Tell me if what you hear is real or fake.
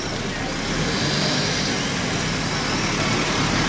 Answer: real